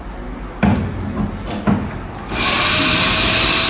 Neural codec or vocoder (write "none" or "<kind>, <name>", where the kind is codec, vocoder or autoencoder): none